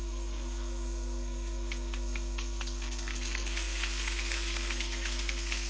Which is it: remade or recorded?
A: remade